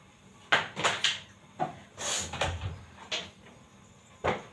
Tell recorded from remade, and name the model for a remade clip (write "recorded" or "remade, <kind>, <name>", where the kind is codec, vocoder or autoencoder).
recorded